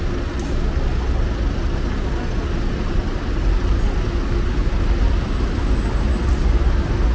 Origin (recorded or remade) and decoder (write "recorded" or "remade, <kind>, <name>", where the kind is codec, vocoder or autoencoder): recorded